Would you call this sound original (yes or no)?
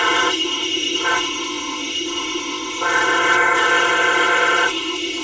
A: no